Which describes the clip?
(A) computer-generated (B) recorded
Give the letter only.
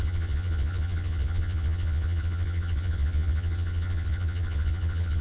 A